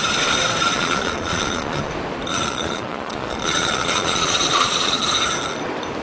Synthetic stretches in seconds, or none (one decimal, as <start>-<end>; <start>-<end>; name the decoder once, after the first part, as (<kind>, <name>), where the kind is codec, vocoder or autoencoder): 0.6-1.9 (vocoder, Vocos); 2.3-5.0